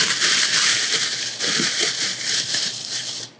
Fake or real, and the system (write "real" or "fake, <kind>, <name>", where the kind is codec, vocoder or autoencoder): fake, vocoder, BigVGAN v2